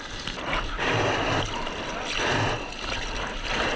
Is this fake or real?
real